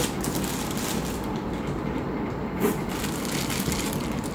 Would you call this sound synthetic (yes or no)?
no